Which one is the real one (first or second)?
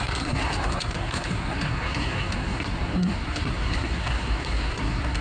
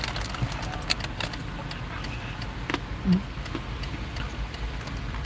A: second